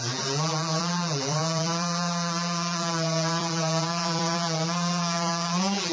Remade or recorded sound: remade